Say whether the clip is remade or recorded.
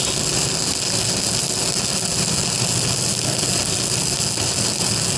recorded